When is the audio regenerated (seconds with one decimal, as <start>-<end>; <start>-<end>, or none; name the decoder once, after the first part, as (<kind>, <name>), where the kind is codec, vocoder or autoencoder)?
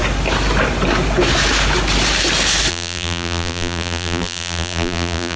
2.7-5.4 (vocoder, BigVGAN v2)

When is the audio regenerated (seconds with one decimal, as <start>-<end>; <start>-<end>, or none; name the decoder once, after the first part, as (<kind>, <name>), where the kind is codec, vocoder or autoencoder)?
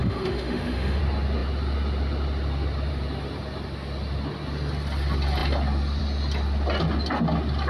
0.0-1.0 (autoencoder, DAC-VAE)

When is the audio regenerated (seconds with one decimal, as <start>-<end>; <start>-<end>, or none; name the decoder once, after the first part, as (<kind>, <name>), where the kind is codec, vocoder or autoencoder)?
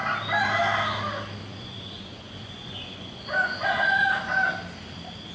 1.4-4.0 (vocoder, Vocos)